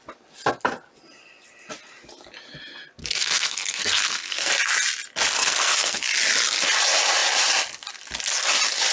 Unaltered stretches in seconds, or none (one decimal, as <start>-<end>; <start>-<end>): 0.0-3.0; 4.5-5.4; 6.0-8.9